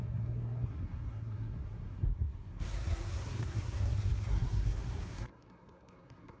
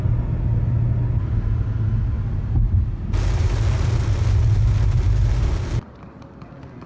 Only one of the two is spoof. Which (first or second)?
first